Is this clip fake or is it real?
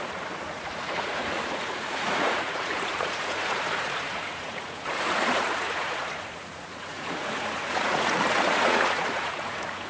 fake